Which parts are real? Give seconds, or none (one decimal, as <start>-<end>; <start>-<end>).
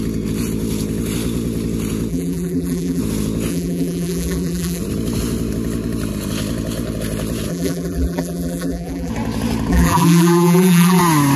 0.0-2.1; 3.0-3.5; 4.8-7.5; 9.1-9.7; 11.0-11.4